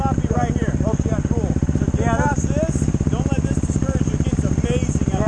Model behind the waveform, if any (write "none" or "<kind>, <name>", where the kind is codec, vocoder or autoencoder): none